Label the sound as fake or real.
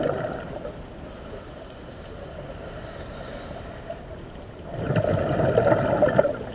real